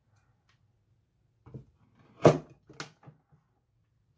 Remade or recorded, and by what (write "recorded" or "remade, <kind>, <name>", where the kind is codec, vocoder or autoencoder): recorded